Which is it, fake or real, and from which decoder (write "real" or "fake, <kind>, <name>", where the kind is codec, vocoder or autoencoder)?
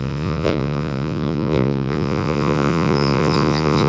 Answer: fake, vocoder, Vocos